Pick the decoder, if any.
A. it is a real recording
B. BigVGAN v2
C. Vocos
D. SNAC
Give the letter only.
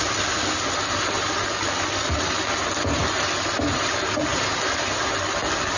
A